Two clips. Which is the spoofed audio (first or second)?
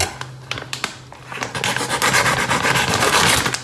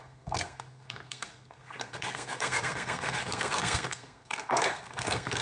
second